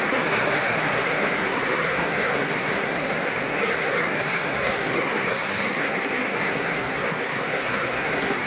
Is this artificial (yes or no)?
yes